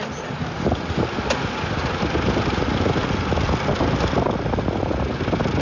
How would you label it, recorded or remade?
recorded